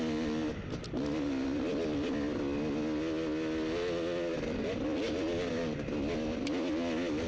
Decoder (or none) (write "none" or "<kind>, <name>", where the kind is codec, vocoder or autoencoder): none